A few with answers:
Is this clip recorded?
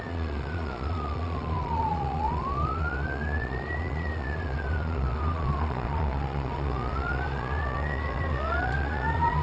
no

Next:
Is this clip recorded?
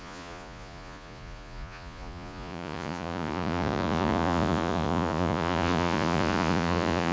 no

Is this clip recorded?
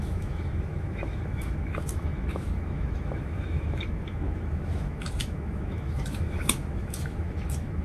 no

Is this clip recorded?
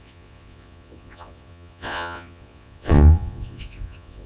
no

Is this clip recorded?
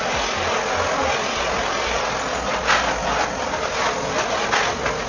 yes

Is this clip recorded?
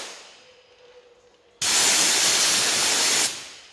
yes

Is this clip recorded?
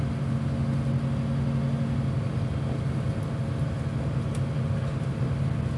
yes